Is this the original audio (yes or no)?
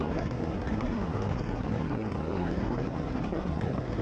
no